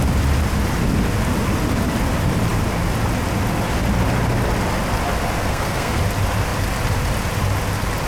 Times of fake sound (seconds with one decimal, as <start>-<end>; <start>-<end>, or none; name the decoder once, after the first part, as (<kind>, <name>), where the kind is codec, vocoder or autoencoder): 5.4-6.0 (codec, SNAC)